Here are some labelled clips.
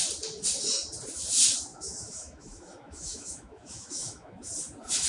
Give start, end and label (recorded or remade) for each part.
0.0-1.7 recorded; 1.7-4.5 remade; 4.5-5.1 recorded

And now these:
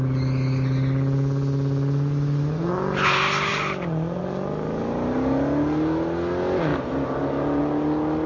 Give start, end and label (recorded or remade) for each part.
0.0-8.3 recorded

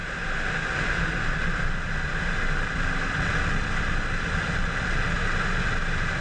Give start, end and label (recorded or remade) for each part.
0.0-6.2 recorded